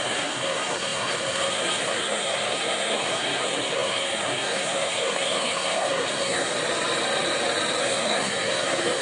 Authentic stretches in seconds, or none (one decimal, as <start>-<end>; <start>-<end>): 6.5-7.8